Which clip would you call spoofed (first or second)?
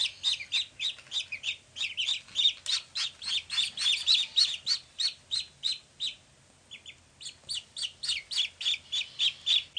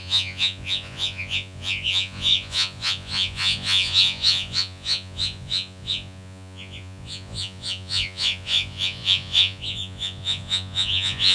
second